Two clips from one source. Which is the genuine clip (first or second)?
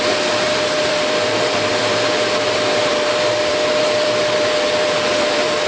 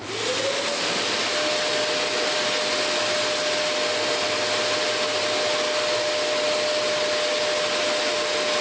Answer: second